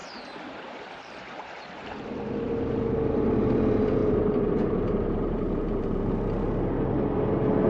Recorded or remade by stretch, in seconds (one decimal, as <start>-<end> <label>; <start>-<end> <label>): 0.0-2.0 remade; 2.0-4.0 recorded; 4.0-6.0 remade; 6.0-7.7 recorded